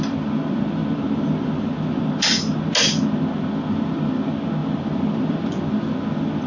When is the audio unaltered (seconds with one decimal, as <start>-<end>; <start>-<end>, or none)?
0.0-6.5